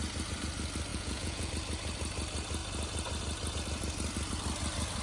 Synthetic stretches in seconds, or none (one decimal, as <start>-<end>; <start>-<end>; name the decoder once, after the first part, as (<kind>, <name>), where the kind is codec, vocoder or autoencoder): 0.9-1.5 (vocoder, Vocos)